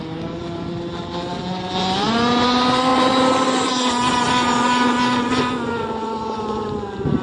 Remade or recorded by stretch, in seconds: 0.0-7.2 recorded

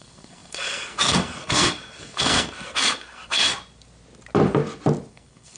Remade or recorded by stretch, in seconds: 0.0-3.5 remade; 3.5-5.1 recorded; 5.1-5.6 remade

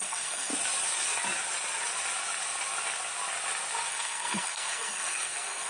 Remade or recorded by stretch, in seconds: 0.0-0.5 remade; 0.5-3.9 recorded; 3.9-5.7 remade